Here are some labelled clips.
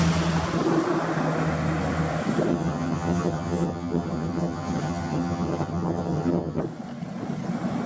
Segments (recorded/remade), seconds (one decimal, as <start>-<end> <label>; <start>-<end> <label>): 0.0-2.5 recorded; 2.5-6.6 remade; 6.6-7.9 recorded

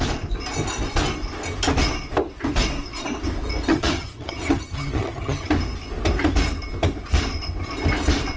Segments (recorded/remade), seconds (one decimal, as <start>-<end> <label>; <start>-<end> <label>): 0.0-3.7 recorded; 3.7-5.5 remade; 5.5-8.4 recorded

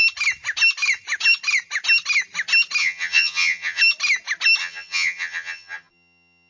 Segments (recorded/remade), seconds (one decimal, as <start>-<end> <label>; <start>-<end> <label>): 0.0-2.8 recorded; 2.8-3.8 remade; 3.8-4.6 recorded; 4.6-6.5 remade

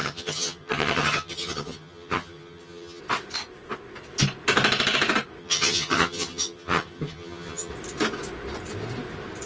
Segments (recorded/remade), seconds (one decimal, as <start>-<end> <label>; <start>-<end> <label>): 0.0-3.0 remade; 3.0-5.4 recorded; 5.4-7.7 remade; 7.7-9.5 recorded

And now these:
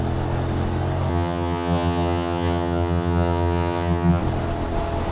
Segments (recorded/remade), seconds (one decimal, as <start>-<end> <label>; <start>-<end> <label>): 0.0-1.1 recorded; 1.1-4.2 remade; 4.2-5.1 recorded

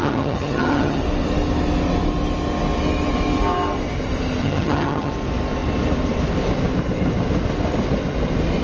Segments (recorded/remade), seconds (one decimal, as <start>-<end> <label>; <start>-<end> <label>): 0.0-1.0 remade; 1.0-4.4 recorded; 4.4-5.1 remade; 5.1-8.6 recorded